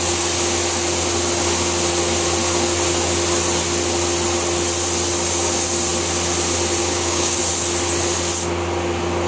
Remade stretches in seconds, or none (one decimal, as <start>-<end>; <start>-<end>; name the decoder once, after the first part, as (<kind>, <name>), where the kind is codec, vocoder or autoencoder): 6.8-7.4 (codec, DAC)